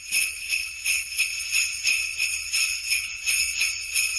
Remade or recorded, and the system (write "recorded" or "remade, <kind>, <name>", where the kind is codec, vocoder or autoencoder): remade, vocoder, Vocos